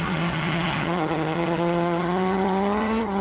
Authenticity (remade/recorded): remade